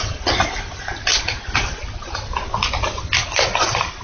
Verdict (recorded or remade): recorded